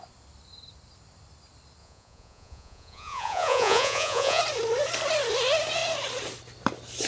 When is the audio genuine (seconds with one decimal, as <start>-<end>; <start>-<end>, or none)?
0.0-1.8; 4.4-7.1